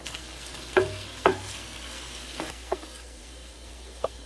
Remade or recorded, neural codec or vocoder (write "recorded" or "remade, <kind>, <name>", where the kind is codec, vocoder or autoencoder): remade, codec, SNAC